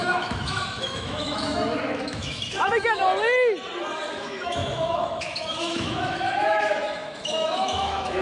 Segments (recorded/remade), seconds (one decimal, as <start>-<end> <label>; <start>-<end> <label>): 0.0-3.0 remade; 3.0-4.1 recorded; 4.1-8.2 remade